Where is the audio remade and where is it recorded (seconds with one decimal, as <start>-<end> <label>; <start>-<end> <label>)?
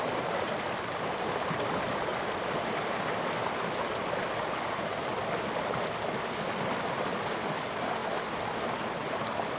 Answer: 0.0-9.6 recorded